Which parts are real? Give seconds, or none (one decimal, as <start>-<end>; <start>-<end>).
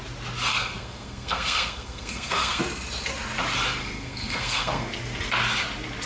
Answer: 0.0-0.5; 2.6-3.8; 4.9-6.1